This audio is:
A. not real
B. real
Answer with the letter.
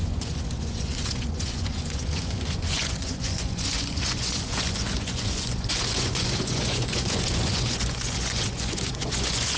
A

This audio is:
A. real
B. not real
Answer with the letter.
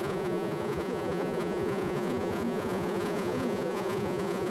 B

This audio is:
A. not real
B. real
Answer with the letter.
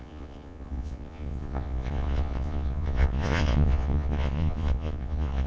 A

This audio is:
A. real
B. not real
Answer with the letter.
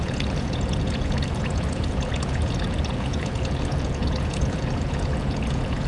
B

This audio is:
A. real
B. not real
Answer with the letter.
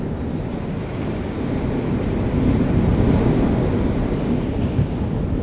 A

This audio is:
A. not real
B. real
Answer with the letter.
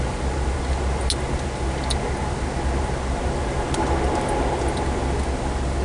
B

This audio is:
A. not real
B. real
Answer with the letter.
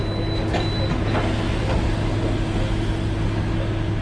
B